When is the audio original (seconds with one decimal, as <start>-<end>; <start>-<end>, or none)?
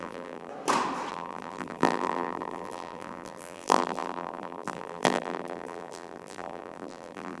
0.5-1.1